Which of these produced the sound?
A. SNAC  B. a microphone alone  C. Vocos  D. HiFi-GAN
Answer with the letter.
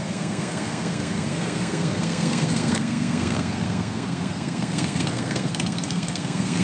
A